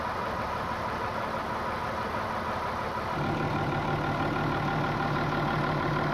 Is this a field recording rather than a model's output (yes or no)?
yes